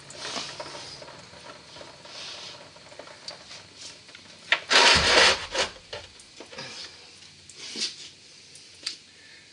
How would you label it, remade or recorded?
recorded